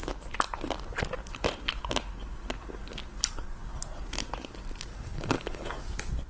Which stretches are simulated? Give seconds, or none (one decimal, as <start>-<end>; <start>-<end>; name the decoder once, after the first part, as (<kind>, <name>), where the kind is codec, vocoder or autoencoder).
4.9-5.7 (codec, HILCodec)